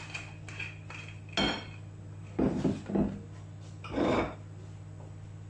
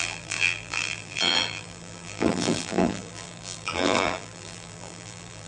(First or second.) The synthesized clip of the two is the second